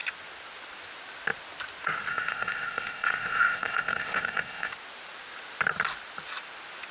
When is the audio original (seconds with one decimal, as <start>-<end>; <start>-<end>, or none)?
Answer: 0.0-2.1; 4.7-6.9